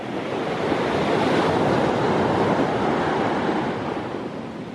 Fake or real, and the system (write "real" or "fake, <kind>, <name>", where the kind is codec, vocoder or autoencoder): real